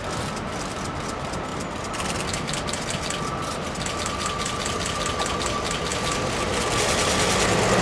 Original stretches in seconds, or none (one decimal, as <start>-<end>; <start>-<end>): 0.0-7.8